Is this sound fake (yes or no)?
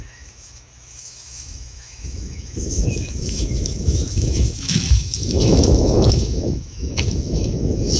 yes